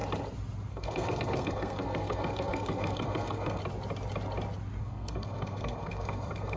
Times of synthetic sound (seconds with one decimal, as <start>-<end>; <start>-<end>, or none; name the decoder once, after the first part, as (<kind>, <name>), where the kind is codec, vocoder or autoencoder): 0.7-3.6 (codec, SNAC); 4.8-6.6